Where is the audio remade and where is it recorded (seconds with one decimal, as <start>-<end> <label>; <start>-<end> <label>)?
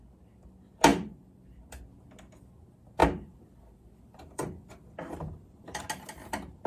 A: 0.0-0.9 recorded; 0.9-1.7 remade; 1.7-3.0 recorded; 3.0-5.8 remade; 5.8-6.7 recorded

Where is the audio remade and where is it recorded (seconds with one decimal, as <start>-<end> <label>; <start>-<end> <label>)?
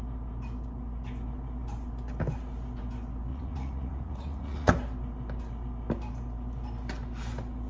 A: 0.0-3.3 recorded; 3.3-4.7 remade; 4.7-7.7 recorded